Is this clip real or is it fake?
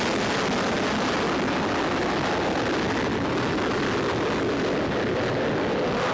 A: real